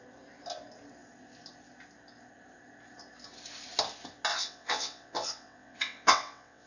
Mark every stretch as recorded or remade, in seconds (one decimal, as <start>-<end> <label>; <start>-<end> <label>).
0.0-4.3 recorded; 4.3-6.7 remade